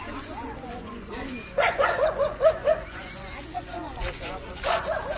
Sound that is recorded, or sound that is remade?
remade